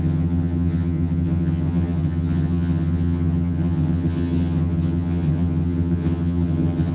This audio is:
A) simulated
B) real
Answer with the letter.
A